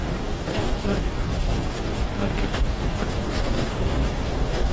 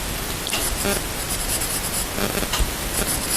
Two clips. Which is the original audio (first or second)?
second